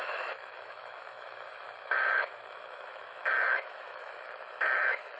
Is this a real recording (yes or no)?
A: no